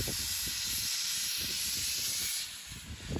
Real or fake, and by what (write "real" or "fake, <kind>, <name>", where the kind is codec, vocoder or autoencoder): real